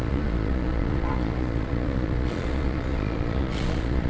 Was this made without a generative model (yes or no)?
no